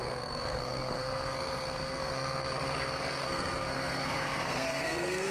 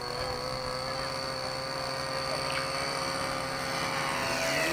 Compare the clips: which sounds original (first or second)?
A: second